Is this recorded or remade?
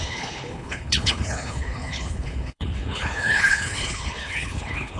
remade